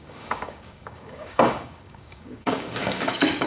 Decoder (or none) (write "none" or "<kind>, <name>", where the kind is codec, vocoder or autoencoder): codec, DAC